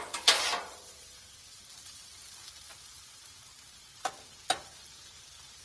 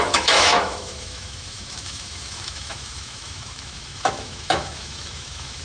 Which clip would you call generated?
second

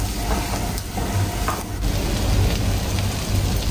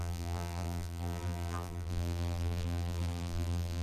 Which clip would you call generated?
second